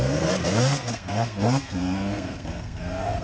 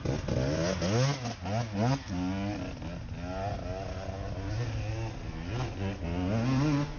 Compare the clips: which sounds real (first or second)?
second